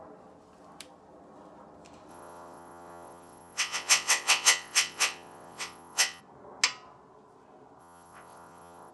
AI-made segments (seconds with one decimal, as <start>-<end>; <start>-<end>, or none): 2.1-6.2; 7.8-8.9